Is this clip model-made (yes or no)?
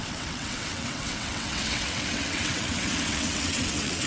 yes